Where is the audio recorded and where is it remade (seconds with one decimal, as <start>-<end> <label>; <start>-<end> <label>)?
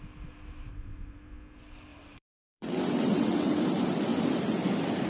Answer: 0.0-0.7 recorded; 0.7-1.2 remade; 1.2-1.9 recorded; 1.9-3.6 remade; 3.6-5.1 recorded